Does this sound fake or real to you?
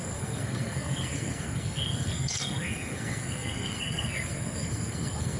fake